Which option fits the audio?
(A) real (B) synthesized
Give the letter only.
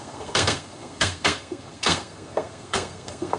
B